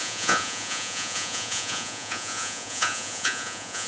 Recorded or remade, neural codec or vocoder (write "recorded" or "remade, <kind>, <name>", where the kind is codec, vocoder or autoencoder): remade, vocoder, Vocos